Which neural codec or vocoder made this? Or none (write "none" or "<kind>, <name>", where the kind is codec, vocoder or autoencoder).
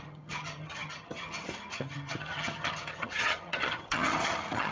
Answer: vocoder, HiFi-GAN